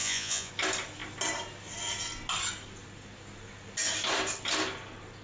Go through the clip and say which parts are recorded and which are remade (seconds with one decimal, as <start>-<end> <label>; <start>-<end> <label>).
0.0-0.5 remade; 0.5-5.2 recorded